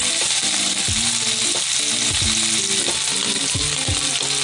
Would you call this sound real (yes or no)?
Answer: yes